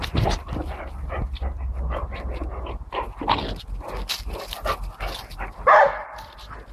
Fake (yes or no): no